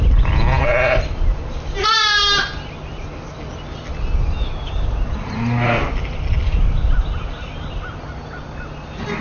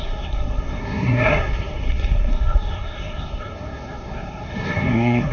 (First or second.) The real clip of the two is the first